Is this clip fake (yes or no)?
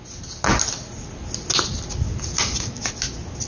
no